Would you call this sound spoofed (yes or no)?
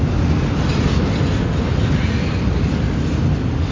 no